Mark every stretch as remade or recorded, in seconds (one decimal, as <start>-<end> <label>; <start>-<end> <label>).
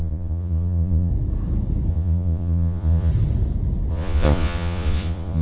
0.0-1.1 remade; 1.1-1.9 recorded; 1.9-3.1 remade; 3.1-3.9 recorded; 3.9-5.4 remade